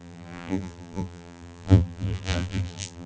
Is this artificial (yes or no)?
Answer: yes